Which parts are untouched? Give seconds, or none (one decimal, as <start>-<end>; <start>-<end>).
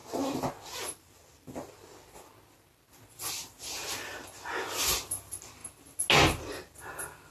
0.0-7.3